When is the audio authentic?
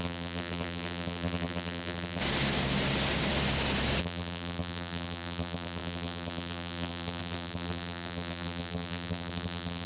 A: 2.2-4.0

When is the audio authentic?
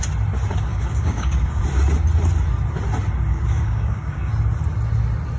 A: 0.0-0.7; 1.6-3.3; 4.3-5.4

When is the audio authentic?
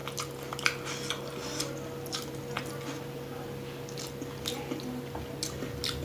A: 0.0-6.0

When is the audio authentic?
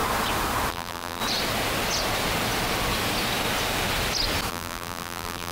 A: 0.0-0.7; 1.2-4.5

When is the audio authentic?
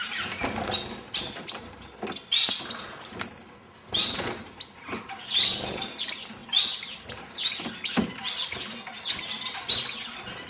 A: 0.0-10.5